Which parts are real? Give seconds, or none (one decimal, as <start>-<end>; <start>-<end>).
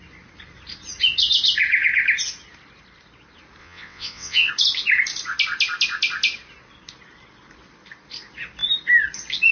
0.0-3.6; 4.5-9.5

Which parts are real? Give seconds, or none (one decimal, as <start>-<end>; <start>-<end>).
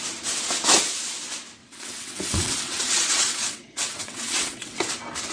0.0-1.6; 4.8-5.3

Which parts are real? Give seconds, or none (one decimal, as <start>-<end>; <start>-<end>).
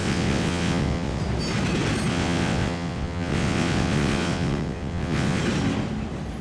1.2-2.1; 5.4-6.4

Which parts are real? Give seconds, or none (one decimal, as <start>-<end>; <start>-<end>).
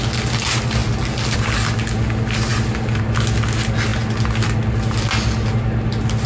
0.0-6.3